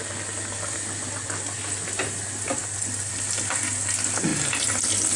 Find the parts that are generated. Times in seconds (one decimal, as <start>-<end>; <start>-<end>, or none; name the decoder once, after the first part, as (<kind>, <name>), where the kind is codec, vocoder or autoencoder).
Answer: 2.6-3.1 (vocoder, BigVGAN v2)